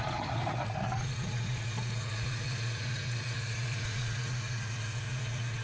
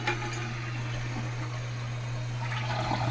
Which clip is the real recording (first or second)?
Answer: second